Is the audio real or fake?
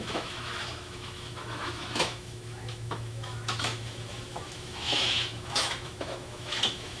fake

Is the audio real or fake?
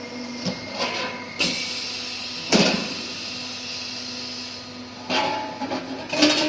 real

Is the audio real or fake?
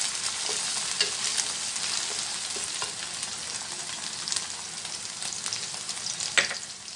real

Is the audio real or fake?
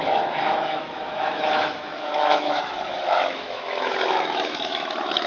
fake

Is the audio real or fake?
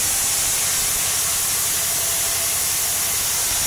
real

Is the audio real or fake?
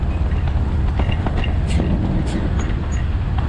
real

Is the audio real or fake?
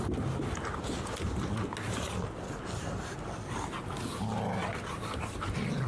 real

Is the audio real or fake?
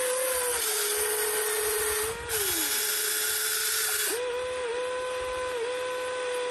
real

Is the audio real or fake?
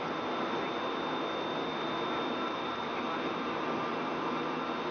real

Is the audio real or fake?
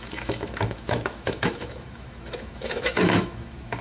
fake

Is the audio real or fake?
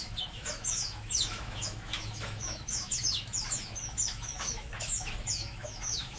fake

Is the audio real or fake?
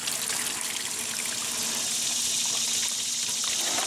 real